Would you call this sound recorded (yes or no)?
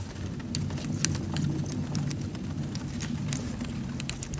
yes